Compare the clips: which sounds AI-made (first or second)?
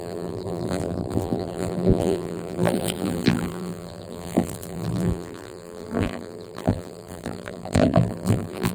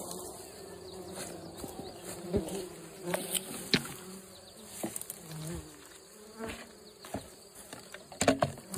first